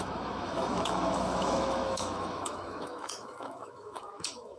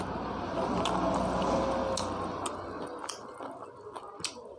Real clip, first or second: second